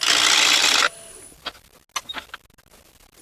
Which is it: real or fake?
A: real